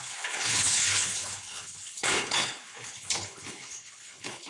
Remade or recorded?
remade